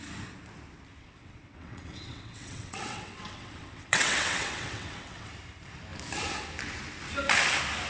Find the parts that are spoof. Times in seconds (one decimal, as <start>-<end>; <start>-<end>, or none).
1.0-5.3